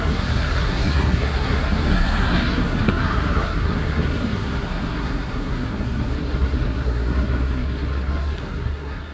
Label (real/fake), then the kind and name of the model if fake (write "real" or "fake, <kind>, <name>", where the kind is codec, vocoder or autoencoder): fake, codec, SNAC